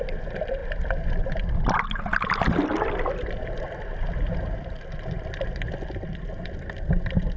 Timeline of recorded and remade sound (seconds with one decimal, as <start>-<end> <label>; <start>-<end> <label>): 0.0-7.4 recorded